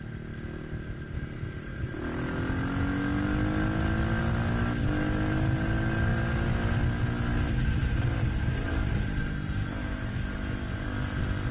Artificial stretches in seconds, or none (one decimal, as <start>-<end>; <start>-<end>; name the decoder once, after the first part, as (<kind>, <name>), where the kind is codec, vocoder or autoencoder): 9.6-10.7 (autoencoder, DAC-VAE)